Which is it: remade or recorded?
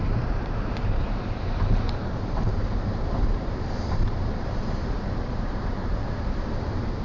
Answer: remade